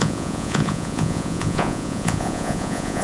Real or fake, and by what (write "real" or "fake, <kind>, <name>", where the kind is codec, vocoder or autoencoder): fake, vocoder, Vocos